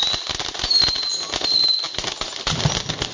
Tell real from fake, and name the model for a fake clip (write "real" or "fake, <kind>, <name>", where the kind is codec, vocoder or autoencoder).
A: real